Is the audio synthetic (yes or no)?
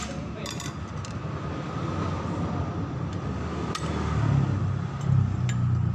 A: no